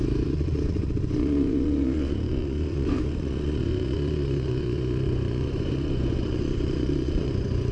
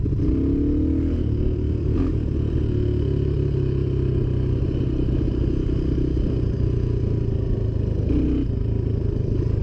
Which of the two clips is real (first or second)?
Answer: second